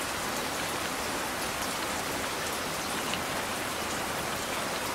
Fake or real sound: real